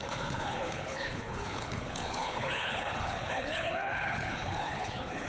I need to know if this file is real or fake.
fake